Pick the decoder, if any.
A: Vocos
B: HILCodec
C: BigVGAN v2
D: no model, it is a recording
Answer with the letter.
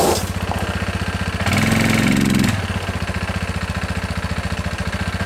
D